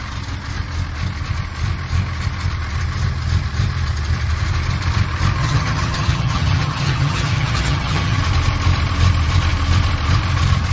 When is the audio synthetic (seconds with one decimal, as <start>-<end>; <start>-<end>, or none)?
5.4-8.2